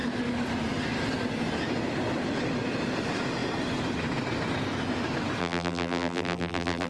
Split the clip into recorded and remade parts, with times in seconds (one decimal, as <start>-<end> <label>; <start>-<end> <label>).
0.0-5.4 recorded; 5.4-6.9 remade